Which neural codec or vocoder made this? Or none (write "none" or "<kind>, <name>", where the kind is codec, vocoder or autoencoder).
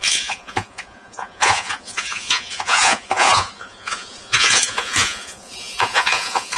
vocoder, Vocos